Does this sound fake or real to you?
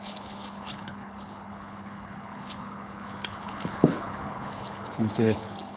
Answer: fake